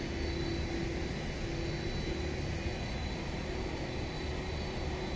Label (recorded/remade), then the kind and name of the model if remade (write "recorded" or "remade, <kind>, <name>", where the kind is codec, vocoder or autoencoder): recorded